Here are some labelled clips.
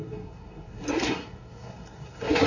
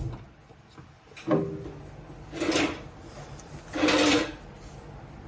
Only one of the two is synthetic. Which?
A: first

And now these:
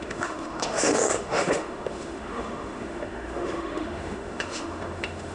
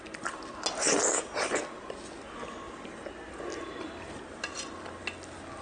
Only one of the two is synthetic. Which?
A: first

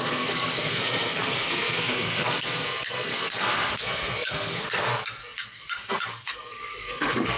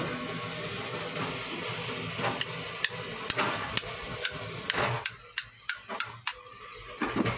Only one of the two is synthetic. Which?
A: first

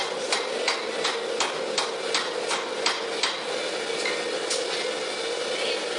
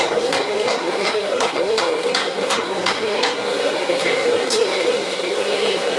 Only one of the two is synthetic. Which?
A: second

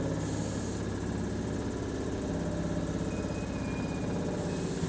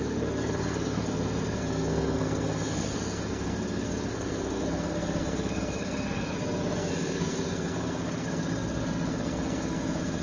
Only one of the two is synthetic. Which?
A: second